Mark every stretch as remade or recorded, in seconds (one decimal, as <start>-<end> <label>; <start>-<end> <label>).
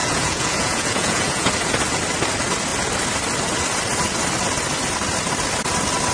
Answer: 0.0-1.5 remade; 1.5-6.1 recorded